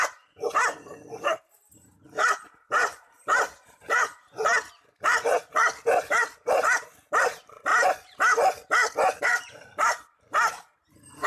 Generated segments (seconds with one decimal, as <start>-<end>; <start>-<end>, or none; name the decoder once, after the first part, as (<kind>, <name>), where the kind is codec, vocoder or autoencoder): 0.0-4.5 (vocoder, BigVGAN v2); 6.1-7.7; 9.2-11.3